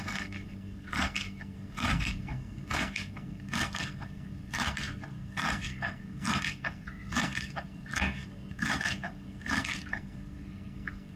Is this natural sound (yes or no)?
no